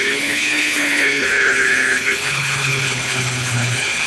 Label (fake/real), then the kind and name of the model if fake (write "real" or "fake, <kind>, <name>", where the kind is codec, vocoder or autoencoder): fake, codec, HILCodec